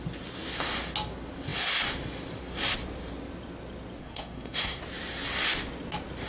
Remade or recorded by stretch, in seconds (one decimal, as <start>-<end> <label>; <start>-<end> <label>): 0.0-4.0 recorded; 4.0-4.8 remade; 4.8-6.3 recorded